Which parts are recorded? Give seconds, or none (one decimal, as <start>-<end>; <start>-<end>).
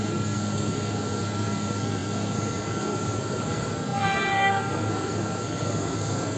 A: none